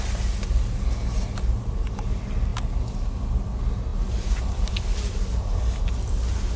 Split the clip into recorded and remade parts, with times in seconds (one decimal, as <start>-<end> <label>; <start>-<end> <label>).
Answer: 0.0-3.9 recorded; 3.9-4.7 remade; 4.7-6.6 recorded